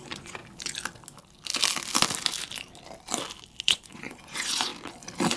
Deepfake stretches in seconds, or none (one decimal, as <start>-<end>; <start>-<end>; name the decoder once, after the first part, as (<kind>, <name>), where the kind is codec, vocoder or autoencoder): 0.0-0.4 (vocoder, Vocos); 3.6-4.7